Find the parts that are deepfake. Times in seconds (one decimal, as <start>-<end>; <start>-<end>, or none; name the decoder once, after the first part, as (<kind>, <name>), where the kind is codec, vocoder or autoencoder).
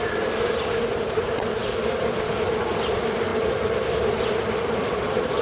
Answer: none